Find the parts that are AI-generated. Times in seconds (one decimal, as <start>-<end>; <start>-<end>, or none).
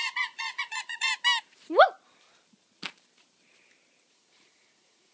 0.0-1.1; 4.1-5.1